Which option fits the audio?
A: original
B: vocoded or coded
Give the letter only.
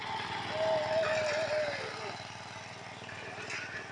A